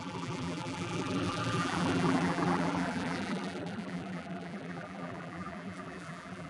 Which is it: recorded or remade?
remade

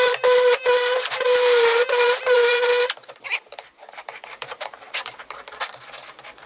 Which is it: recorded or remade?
remade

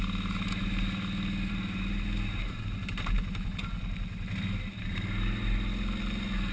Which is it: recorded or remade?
recorded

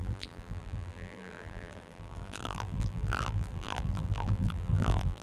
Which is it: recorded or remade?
remade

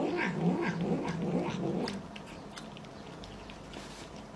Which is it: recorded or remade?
remade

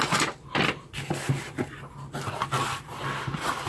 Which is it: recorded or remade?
recorded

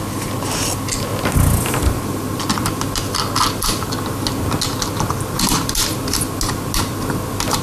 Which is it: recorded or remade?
recorded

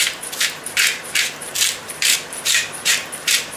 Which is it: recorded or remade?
remade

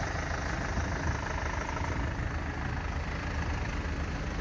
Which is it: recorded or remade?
recorded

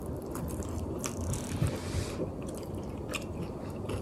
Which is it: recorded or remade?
remade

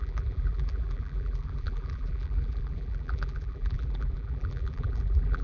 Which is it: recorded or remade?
remade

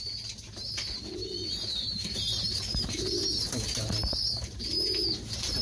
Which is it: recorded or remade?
remade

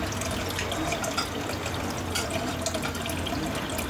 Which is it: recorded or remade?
recorded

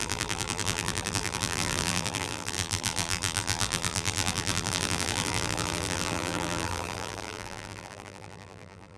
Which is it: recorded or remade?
remade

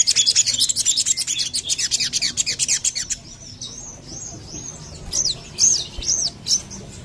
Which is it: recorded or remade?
recorded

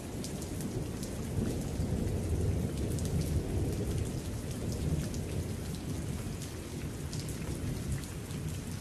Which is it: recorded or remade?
recorded